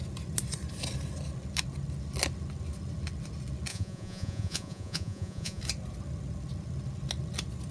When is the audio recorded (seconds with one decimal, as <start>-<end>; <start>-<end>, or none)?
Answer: 0.0-3.7; 5.6-7.7